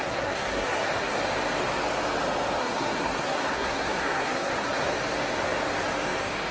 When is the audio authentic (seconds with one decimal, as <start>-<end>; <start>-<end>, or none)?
1.2-2.6; 4.9-6.5